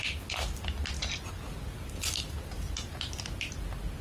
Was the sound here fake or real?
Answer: real